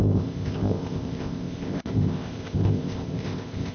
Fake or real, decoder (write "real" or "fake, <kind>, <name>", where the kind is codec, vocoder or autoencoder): fake, codec, ZipCodec